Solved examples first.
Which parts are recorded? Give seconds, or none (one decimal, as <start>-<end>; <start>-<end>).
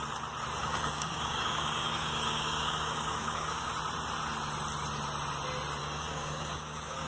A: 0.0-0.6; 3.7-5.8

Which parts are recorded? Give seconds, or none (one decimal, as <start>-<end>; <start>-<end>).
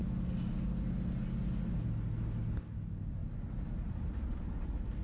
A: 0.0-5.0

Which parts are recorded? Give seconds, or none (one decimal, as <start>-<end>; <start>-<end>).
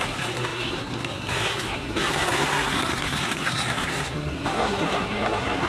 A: none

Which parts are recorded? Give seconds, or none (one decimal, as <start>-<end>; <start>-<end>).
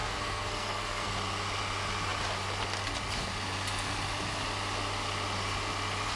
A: 1.1-6.2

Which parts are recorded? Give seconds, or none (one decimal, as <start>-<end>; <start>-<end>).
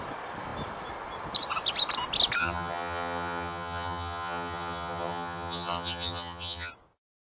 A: 0.0-2.4; 6.7-7.2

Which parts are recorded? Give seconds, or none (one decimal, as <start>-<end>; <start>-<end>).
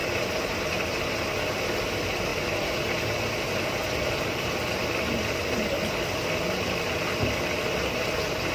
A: 0.0-8.5